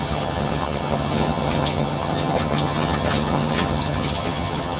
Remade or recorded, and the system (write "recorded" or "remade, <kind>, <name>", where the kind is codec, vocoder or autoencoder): remade, vocoder, HiFi-GAN